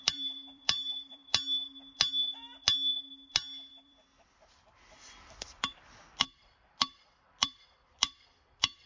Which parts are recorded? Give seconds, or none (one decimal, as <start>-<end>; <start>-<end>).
1.2-3.7